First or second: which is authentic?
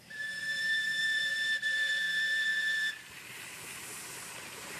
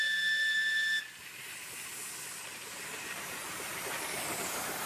second